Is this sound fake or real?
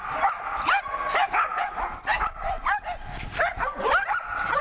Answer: real